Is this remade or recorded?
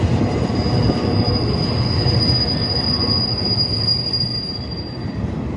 recorded